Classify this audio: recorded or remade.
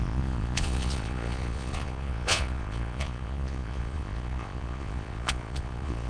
remade